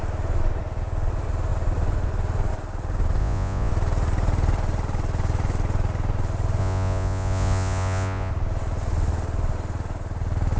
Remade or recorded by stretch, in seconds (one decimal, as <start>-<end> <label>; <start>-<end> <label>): 0.0-3.2 recorded; 3.2-3.7 remade; 3.7-6.6 recorded; 6.6-8.3 remade; 8.3-10.6 recorded